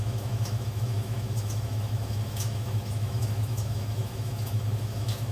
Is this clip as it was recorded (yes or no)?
no